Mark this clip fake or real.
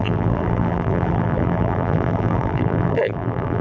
fake